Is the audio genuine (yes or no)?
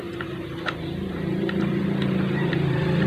no